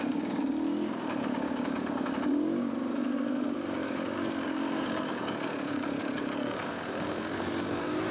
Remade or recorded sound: remade